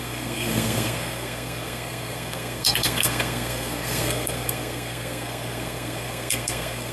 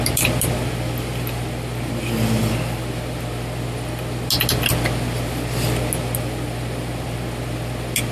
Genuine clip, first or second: second